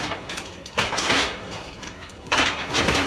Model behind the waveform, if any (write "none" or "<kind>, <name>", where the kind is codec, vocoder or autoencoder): codec, SNAC